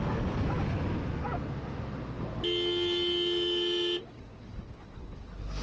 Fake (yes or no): no